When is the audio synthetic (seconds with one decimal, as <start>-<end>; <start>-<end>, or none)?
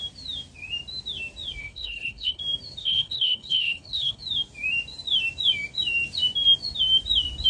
1.6-2.4; 2.8-4.2